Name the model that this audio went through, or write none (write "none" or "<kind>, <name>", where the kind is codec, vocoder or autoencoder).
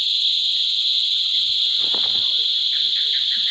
none